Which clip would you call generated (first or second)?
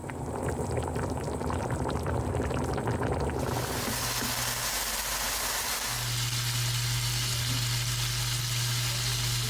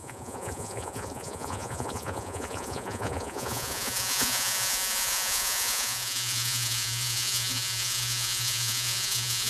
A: second